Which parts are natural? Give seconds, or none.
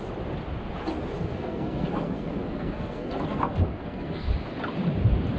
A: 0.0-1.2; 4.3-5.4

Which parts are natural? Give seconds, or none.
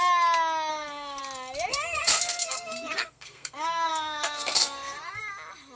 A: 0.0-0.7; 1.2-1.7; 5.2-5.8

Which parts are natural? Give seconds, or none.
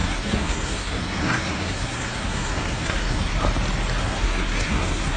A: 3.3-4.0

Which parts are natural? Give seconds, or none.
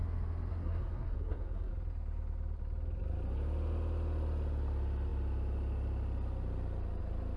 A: 0.0-0.5; 1.7-7.4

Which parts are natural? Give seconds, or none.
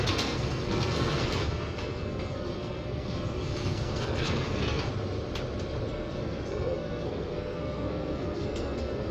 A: 4.9-5.9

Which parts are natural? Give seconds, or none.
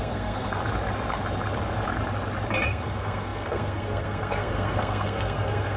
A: 0.6-2.7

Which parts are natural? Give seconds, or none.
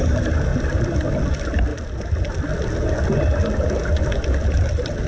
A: 0.0-5.1